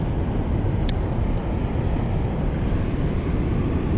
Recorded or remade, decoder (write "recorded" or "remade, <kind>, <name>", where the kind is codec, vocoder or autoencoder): recorded